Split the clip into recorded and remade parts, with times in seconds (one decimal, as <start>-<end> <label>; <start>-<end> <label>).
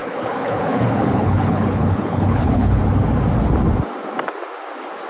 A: 0.0-2.8 remade; 2.8-5.1 recorded